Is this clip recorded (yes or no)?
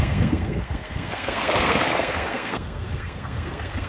no